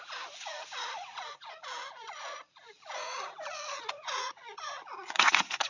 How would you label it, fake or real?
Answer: fake